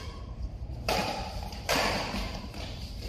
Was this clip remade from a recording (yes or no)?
yes